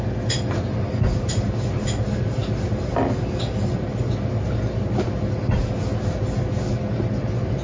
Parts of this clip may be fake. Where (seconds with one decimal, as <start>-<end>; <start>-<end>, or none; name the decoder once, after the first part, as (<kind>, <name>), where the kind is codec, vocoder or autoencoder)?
none